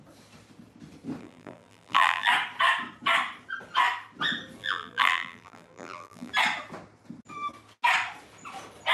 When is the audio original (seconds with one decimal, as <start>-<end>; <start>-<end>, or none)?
0.0-1.2; 2.3-4.6; 6.3-8.9